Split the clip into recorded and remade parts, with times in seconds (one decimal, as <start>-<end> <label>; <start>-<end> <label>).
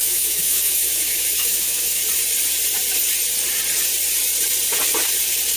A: 0.0-2.0 remade; 2.0-5.6 recorded